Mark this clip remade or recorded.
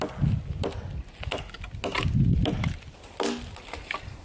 recorded